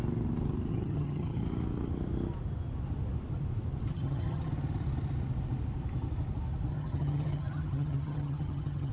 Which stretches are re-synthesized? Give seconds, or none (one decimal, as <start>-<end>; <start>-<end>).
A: 0.7-1.4; 3.9-4.5; 6.7-8.9